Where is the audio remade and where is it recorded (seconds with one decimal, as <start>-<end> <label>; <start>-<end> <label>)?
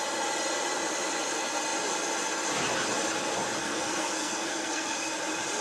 0.0-3.6 recorded; 3.6-5.1 remade; 5.1-5.6 recorded